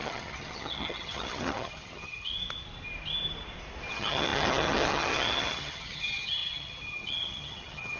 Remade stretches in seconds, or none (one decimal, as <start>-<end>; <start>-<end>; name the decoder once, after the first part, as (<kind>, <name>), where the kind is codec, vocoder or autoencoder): 0.0-2.3 (vocoder, HiFi-GAN); 3.9-8.0